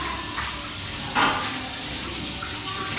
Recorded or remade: recorded